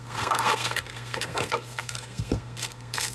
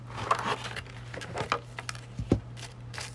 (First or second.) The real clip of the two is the second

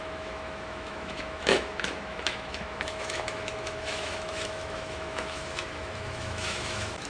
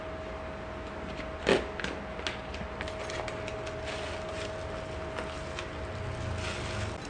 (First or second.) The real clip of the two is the second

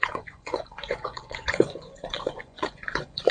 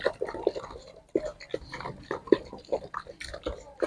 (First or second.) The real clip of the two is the second